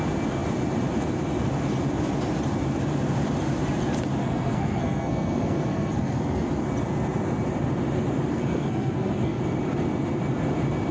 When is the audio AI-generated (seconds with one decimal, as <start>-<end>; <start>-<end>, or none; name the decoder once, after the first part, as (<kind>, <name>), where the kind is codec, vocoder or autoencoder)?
4.2-6.5 (codec, SNAC); 8.3-9.4